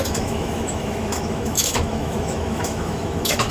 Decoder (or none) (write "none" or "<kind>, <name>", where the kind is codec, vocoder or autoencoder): autoencoder, DAC-VAE